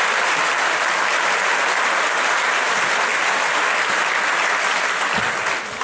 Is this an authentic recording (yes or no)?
yes